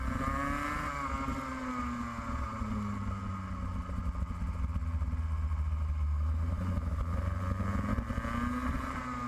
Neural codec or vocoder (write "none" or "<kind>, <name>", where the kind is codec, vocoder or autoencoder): none